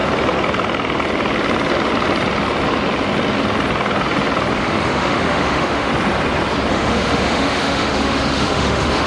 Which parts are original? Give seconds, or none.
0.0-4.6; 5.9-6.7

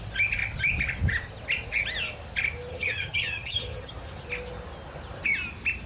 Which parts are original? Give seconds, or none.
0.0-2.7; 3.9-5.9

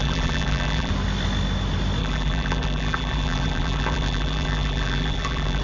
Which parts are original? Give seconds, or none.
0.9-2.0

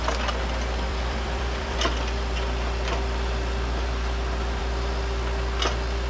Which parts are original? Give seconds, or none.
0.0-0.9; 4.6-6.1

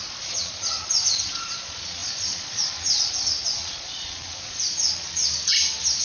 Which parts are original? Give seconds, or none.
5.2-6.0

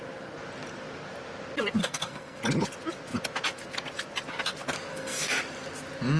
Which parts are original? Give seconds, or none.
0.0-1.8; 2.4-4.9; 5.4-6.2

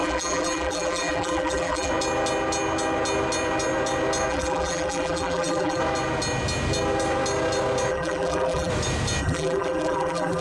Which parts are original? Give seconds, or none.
1.9-4.3; 5.8-7.9; 8.7-9.2